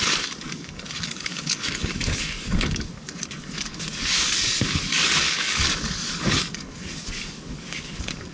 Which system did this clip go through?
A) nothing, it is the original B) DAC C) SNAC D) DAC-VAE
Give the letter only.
B